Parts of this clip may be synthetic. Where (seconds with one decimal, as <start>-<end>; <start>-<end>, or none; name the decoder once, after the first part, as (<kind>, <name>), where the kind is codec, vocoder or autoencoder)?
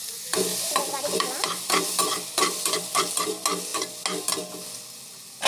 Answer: 0.5-3.1 (vocoder, BigVGAN v2)